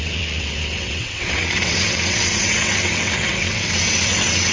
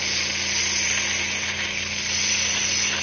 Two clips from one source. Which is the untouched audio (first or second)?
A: second